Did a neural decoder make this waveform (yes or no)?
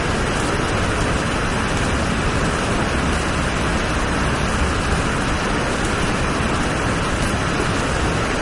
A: no